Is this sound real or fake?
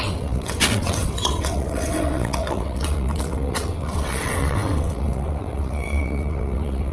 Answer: fake